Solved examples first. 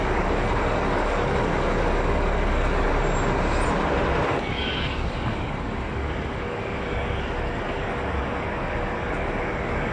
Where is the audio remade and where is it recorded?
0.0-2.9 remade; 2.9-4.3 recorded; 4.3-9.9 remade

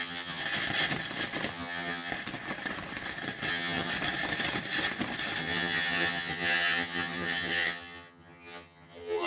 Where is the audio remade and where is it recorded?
0.0-0.4 remade; 0.4-1.5 recorded; 1.5-2.1 remade; 2.1-3.5 recorded; 3.5-3.9 remade; 3.9-5.4 recorded; 5.4-9.3 remade

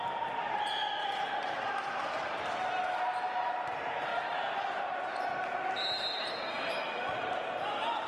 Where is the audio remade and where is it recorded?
0.0-1.0 recorded; 1.0-2.4 remade; 2.4-8.1 recorded

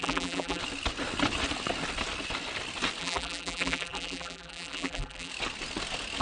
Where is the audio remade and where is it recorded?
0.0-0.6 remade; 0.6-3.0 recorded; 3.0-5.3 remade; 5.3-6.2 recorded

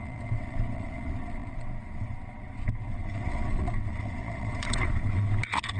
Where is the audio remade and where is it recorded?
0.0-5.8 remade